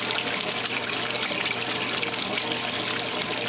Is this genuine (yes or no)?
yes